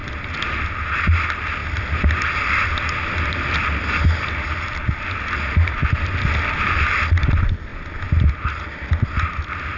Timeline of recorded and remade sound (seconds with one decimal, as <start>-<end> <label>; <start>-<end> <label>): 0.0-9.8 recorded